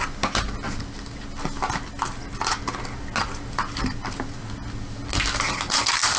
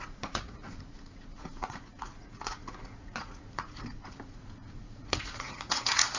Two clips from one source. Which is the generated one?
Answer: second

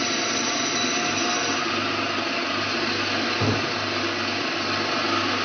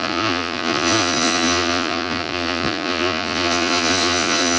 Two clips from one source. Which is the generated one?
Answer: second